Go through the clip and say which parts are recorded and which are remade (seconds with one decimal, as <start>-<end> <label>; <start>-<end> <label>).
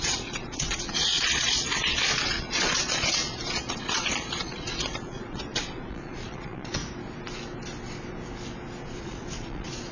0.0-6.8 remade; 6.8-9.0 recorded; 9.0-9.9 remade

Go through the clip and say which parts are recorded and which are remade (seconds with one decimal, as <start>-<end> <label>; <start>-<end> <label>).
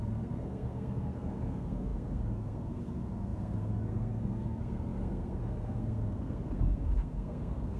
0.0-7.8 remade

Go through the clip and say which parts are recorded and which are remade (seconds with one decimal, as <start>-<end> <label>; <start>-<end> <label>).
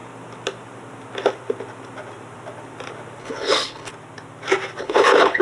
0.0-3.2 recorded; 3.2-3.9 remade; 3.9-4.8 recorded; 4.8-5.4 remade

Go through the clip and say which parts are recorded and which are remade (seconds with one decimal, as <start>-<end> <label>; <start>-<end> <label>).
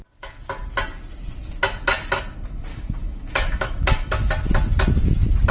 0.0-2.7 recorded; 2.7-4.3 remade; 4.3-5.5 recorded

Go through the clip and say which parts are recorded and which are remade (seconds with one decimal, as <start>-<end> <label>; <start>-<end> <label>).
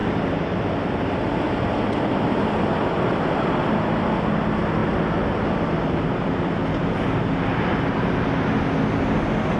0.0-4.1 remade; 4.1-9.6 recorded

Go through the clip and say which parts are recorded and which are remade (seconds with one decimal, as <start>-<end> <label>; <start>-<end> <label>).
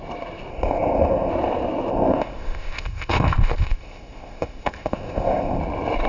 0.0-0.5 recorded; 0.5-1.3 remade; 1.3-1.9 recorded; 1.9-5.6 remade; 5.6-6.1 recorded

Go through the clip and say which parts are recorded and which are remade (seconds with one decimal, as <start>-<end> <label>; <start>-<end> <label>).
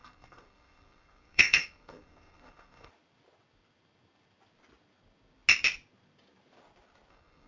0.0-2.9 remade; 2.9-7.1 recorded; 7.1-7.5 remade